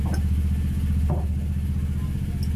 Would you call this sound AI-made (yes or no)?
no